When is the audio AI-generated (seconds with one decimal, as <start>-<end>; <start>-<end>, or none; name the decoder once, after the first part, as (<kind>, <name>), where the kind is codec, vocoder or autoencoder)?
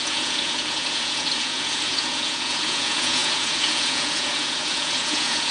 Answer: 0.0-5.5 (vocoder, Vocos)